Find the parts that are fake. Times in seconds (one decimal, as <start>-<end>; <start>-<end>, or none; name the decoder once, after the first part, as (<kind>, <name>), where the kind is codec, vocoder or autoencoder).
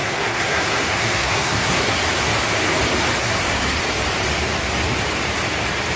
0.0-2.0 (codec, SNAC); 3.2-3.8